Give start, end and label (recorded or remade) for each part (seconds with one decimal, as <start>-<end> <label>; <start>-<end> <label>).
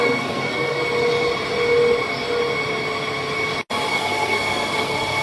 0.0-0.8 remade; 0.8-3.9 recorded; 3.9-5.2 remade